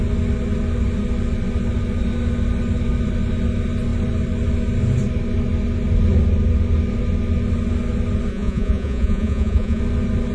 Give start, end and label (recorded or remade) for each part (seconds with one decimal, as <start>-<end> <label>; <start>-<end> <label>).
0.0-8.3 recorded; 8.3-9.8 remade; 9.8-10.3 recorded